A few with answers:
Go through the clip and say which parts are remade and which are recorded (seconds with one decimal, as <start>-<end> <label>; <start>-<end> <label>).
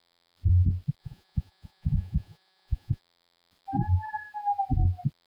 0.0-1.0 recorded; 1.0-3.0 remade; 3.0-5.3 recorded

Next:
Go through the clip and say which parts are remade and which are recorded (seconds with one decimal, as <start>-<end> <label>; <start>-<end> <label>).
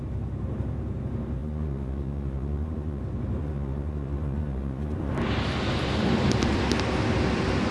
0.0-1.4 recorded; 1.4-3.0 remade; 3.0-3.4 recorded; 3.4-5.1 remade; 5.1-7.7 recorded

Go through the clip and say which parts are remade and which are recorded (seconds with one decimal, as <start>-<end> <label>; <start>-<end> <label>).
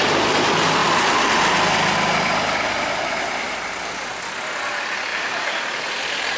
0.0-6.4 recorded